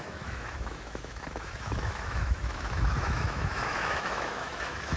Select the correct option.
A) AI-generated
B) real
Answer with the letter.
A